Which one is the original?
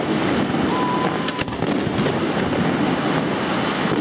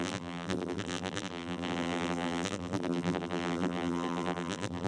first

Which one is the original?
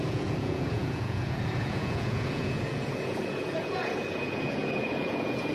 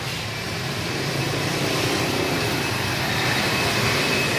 second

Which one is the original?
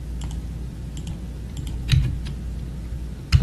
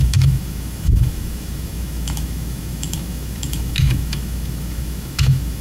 first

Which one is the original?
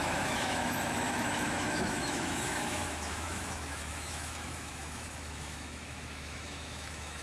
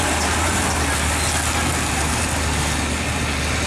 second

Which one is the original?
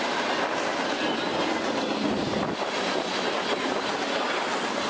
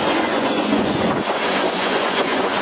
first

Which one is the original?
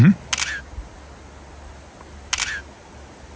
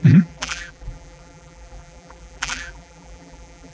first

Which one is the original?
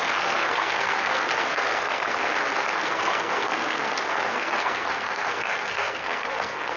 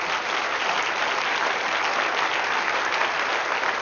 second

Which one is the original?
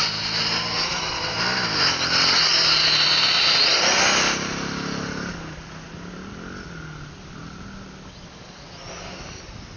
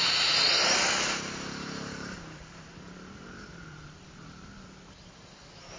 first